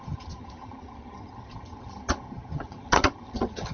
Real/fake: fake